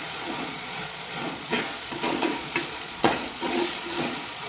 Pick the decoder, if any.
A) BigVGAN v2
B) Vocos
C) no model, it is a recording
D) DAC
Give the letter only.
B